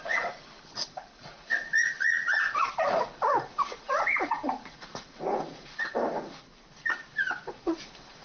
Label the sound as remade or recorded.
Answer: remade